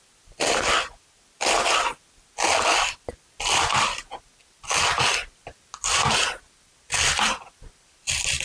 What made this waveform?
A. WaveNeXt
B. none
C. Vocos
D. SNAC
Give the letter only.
B